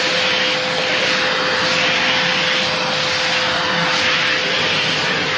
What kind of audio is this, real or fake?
real